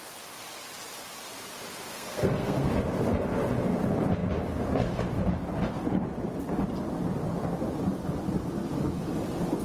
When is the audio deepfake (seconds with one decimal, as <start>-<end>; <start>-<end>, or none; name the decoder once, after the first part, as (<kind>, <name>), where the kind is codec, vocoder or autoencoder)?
1.9-2.7 (codec, SNAC)